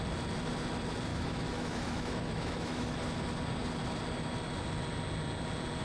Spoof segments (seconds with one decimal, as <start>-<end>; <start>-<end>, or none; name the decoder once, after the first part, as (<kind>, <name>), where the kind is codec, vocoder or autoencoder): 1.1-3.0 (autoencoder, DAC-VAE)